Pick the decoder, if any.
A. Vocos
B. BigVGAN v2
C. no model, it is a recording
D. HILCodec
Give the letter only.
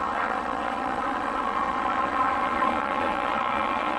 A